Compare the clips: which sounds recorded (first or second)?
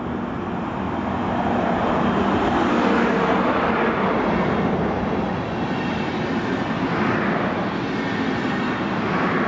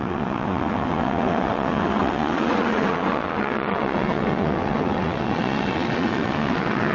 first